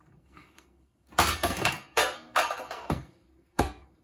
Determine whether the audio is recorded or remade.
remade